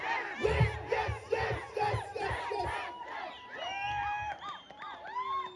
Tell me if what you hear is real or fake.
real